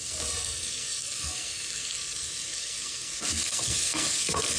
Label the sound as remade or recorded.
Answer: remade